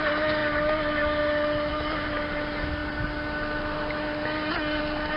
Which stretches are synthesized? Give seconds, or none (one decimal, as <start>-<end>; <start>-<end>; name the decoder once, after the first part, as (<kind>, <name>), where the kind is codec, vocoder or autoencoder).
0.0-0.4 (vocoder, BigVGAN v2); 1.7-2.8; 4.8-5.2